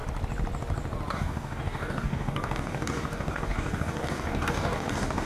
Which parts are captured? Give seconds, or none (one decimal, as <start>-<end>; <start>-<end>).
0.0-1.1